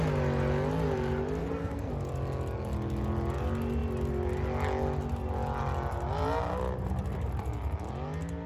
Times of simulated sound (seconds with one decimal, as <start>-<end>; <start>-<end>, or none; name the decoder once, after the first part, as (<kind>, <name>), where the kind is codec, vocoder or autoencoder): 1.4-1.9 (codec, SNAC)

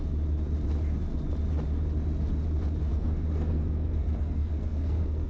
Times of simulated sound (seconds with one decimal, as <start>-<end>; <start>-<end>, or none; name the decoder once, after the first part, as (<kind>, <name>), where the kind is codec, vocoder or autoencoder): 2.9-5.3 (codec, SNAC)

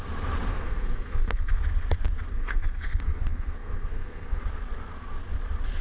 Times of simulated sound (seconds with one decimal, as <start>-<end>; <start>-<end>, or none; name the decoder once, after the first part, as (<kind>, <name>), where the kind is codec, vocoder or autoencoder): 0.5-1.6 (codec, SNAC); 2.3-4.4